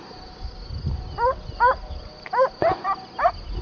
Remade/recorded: recorded